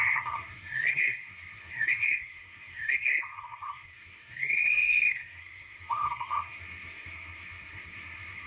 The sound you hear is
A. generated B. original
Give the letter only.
A